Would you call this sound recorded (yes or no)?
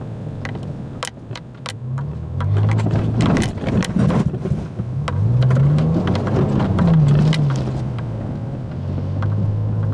yes